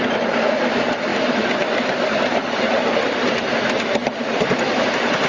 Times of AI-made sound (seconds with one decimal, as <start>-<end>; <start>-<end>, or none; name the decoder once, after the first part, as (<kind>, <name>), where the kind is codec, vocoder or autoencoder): 1.1-3.5 (vocoder, BigVGAN v2); 4.0-4.5